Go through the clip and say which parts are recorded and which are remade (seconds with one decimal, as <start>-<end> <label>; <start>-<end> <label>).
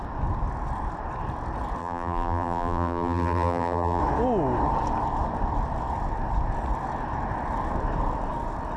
0.0-1.8 recorded; 1.8-4.0 remade; 4.0-8.8 recorded